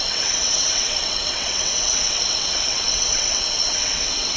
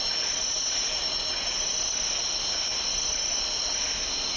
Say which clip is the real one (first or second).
second